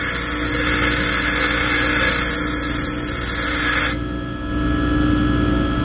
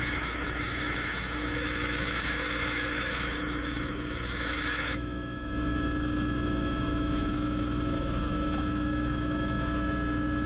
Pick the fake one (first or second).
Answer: second